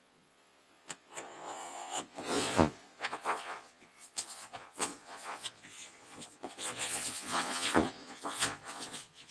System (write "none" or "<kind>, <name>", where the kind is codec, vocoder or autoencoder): vocoder, Vocos